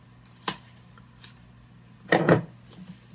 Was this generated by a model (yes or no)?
no